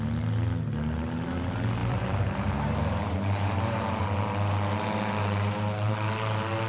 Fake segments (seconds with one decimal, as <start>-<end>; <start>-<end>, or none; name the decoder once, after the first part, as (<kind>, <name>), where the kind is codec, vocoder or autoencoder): 1.8-4.0 (vocoder, BigVGAN v2)